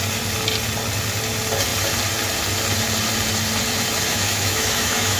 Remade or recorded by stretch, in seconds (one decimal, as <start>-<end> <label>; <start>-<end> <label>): 0.0-4.1 recorded; 4.1-5.2 remade